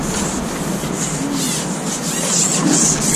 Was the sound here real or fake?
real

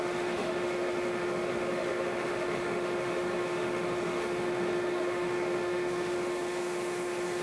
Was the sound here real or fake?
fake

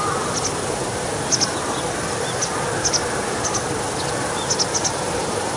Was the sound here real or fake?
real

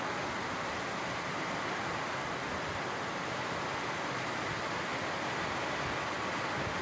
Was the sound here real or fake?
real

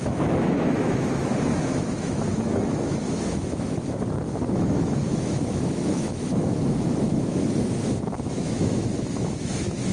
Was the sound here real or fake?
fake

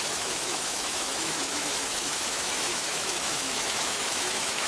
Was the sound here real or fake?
fake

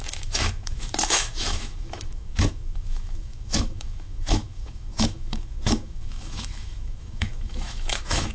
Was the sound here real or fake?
fake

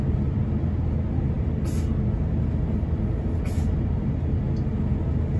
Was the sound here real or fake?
real